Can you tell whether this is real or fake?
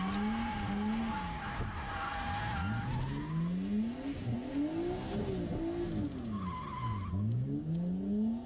real